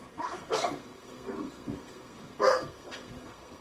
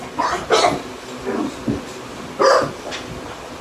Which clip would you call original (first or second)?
second